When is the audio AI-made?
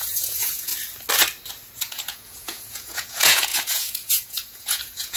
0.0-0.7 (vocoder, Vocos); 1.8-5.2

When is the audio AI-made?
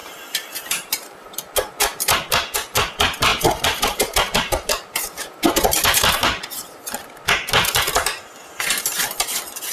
0.0-1.3 (vocoder, BigVGAN v2); 3.3-6.8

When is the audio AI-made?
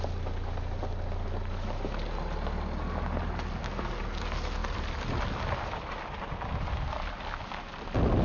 none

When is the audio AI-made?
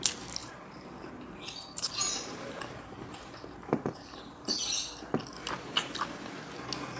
0.4-4.6 (vocoder, BigVGAN v2)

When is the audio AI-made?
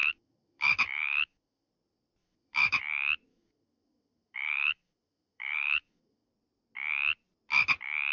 0.0-1.7 (autoencoder, DAC-VAE); 2.2-2.8; 3.3-6.3